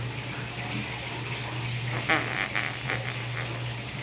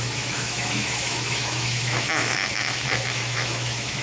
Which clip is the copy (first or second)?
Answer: second